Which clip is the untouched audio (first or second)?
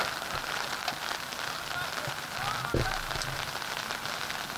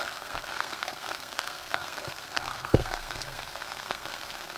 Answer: first